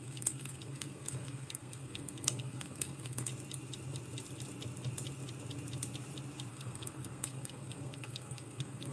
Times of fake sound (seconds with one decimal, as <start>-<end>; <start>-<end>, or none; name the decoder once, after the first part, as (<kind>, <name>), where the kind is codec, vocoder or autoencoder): 0.0-3.3 (codec, SNAC); 6.5-8.9